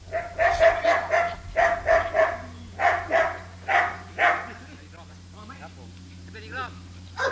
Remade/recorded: recorded